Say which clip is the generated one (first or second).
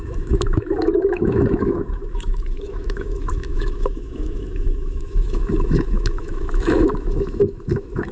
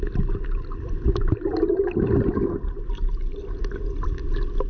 first